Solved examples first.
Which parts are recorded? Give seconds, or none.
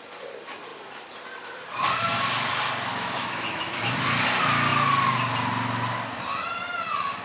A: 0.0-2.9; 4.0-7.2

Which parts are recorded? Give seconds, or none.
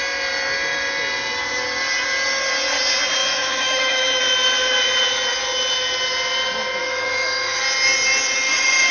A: 0.0-3.2; 4.2-6.8; 7.6-8.9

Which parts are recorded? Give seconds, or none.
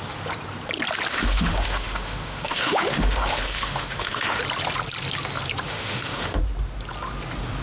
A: 0.0-1.1; 4.4-5.7; 6.4-7.6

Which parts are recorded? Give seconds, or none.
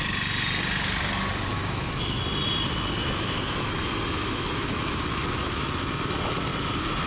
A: 0.0-1.5; 2.2-3.0; 3.8-4.2; 5.8-7.1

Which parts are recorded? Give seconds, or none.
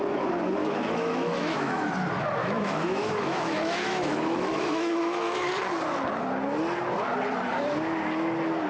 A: 0.0-0.6; 1.9-2.4; 5.5-8.7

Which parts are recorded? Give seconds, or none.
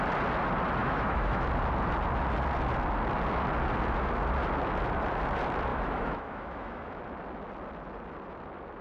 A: 0.0-0.8; 1.4-5.7; 7.0-8.8